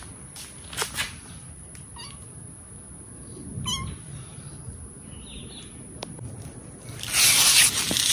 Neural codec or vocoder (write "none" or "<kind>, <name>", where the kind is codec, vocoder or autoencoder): none